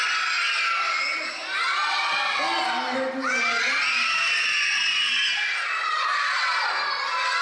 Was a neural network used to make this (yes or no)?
no